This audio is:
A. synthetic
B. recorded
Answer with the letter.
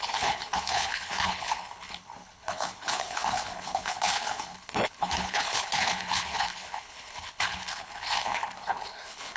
A